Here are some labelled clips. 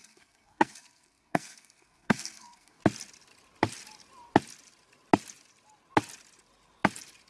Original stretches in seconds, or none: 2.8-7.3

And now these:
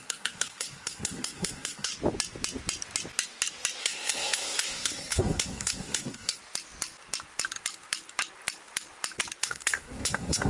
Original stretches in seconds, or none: 1.9-3.8; 6.4-9.4

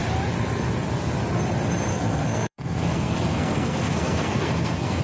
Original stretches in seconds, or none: 0.0-1.9

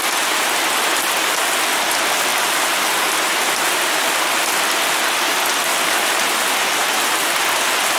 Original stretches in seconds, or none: 0.0-8.0

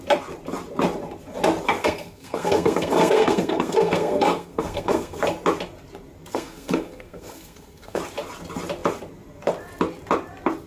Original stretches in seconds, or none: 0.0-1.8; 5.2-6.3; 8.0-10.7

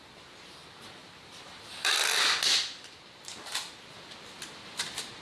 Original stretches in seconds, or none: 0.0-5.2